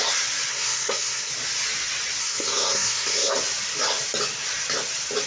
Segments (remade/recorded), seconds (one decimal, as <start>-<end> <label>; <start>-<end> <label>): 0.0-0.5 recorded; 0.5-1.3 remade; 1.3-2.2 recorded; 2.2-3.3 remade; 3.3-5.3 recorded